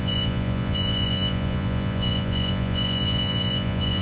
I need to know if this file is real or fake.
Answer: fake